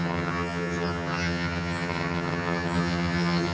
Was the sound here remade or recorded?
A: remade